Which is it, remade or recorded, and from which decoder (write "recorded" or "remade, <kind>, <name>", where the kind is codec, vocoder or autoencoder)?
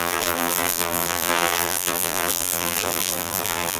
remade, vocoder, BigVGAN v2